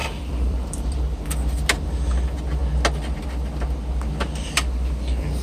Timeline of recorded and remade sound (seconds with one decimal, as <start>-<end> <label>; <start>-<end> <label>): 0.0-1.0 remade; 1.0-5.4 recorded